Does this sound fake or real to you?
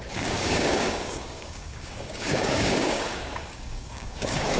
fake